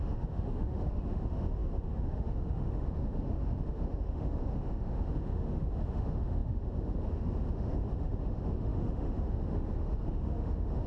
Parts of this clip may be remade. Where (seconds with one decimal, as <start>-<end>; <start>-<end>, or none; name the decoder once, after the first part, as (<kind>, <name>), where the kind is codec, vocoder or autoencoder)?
0.0-10.9 (autoencoder, DAC-VAE)